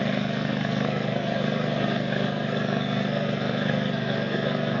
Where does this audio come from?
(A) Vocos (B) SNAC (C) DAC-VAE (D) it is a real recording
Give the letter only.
B